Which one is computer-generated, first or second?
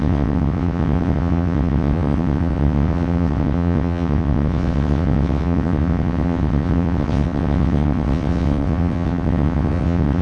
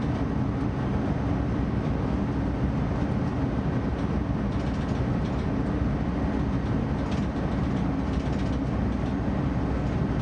first